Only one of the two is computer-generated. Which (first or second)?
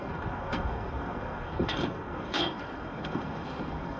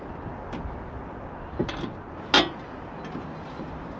first